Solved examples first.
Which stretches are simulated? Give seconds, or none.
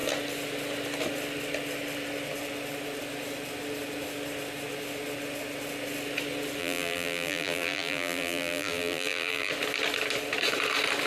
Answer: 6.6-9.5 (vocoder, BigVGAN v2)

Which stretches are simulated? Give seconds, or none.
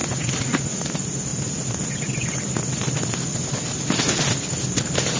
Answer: none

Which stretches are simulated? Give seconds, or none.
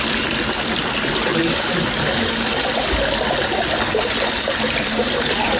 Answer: 0.0-1.3 (vocoder, BigVGAN v2); 4.7-5.6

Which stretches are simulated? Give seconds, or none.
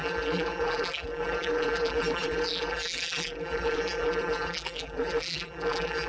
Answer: 0.0-6.1 (vocoder, BigVGAN v2)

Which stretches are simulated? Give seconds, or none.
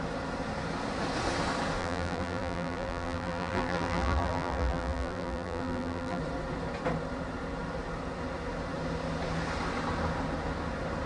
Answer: 1.8-6.2 (vocoder, BigVGAN v2)